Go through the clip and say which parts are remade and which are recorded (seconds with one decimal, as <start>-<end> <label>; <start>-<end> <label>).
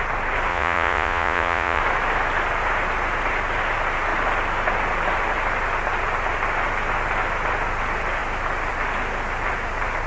0.0-0.5 recorded; 0.5-1.8 remade; 1.8-10.1 recorded